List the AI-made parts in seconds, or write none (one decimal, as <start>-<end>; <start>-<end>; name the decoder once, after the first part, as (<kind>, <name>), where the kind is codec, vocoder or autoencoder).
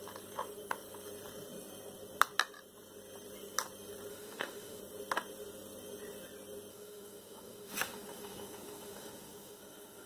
4.1-4.8 (autoencoder, DAC-VAE); 6.7-10.1